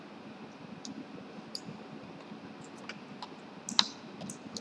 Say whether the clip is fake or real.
real